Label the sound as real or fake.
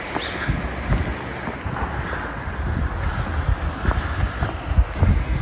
real